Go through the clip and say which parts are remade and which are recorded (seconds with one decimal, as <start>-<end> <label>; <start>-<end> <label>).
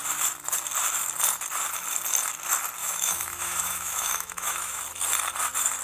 0.0-2.8 recorded; 2.8-4.8 remade; 4.8-5.8 recorded